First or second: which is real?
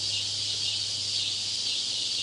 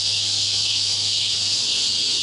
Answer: first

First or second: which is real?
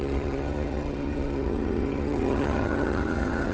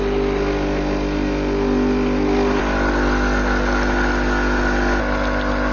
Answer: second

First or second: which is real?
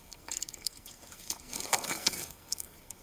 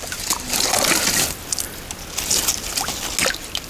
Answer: second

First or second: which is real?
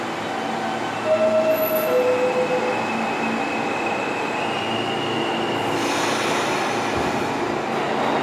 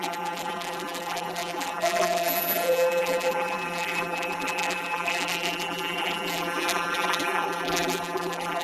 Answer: first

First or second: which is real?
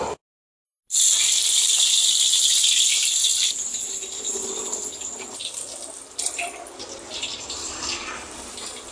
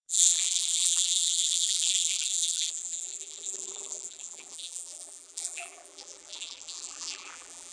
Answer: first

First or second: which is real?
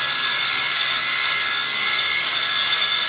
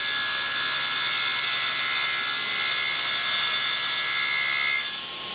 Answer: second